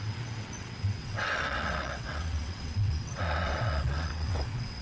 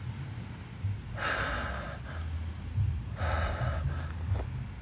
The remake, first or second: first